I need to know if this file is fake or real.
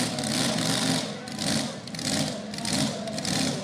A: real